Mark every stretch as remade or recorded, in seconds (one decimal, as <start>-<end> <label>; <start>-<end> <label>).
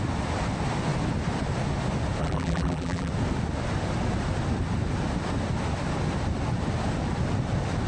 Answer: 0.0-2.2 recorded; 2.2-3.1 remade; 3.1-7.9 recorded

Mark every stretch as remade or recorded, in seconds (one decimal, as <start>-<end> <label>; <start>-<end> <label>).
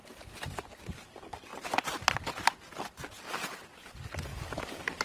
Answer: 0.0-0.9 remade; 0.9-4.3 recorded; 4.3-5.0 remade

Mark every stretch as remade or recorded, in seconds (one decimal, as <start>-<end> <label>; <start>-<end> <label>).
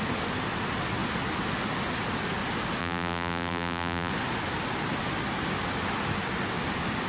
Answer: 0.0-2.8 recorded; 2.8-4.1 remade; 4.1-7.1 recorded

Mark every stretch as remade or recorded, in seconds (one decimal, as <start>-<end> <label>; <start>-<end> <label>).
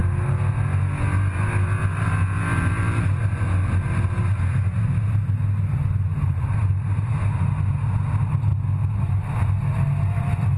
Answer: 0.0-6.1 recorded; 6.1-7.6 remade; 7.6-8.5 recorded; 8.5-9.2 remade; 9.2-10.6 recorded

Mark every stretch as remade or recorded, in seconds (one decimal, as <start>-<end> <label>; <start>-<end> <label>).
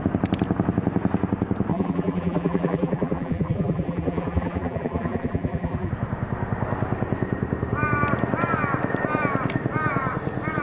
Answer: 0.0-1.7 recorded; 1.7-5.9 remade; 5.9-10.6 recorded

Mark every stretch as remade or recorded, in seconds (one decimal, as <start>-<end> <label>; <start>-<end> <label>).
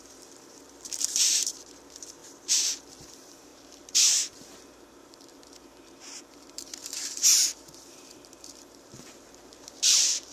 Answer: 0.0-10.3 remade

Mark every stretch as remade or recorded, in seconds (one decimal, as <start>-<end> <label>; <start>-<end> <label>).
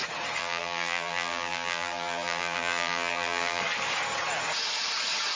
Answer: 0.0-0.4 recorded; 0.4-3.6 remade; 3.6-5.3 recorded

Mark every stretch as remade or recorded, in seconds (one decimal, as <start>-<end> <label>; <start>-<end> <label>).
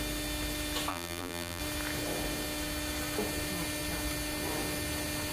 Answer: 0.0-0.9 recorded; 0.9-1.6 remade; 1.6-5.3 recorded